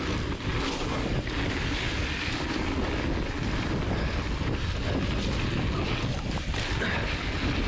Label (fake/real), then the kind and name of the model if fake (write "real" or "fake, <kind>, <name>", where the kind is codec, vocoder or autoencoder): real